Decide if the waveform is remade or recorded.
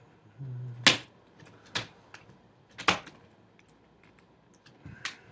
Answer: recorded